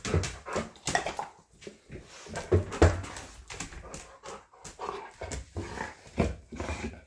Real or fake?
real